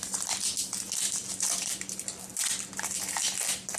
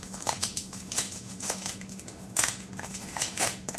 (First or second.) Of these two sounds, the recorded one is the first